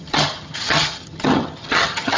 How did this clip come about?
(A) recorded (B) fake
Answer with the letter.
B